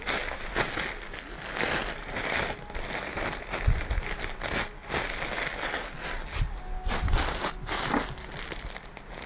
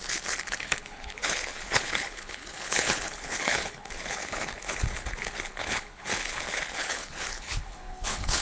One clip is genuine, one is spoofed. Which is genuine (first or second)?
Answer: first